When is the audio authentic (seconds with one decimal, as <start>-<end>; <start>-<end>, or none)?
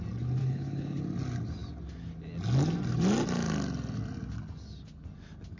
0.0-0.4; 1.0-5.6